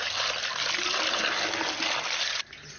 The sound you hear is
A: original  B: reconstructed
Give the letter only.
A